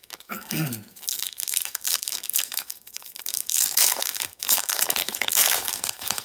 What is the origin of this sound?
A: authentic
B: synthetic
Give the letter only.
B